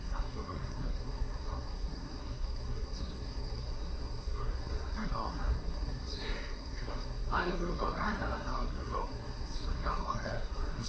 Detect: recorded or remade remade